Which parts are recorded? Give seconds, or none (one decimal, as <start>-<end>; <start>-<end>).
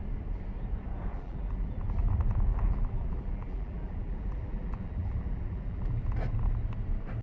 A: 0.0-1.1; 1.7-2.5; 6.0-7.2